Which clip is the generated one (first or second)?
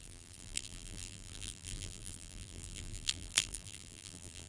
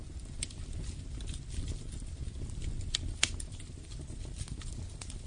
first